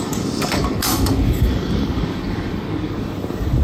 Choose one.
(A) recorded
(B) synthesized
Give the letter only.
B